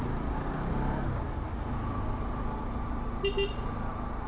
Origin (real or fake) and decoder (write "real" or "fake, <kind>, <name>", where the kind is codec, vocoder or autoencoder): real